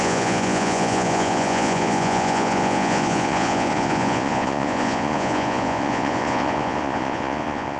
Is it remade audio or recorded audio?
remade